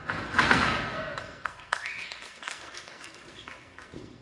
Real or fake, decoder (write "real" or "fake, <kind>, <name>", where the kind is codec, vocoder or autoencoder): fake, codec, SNAC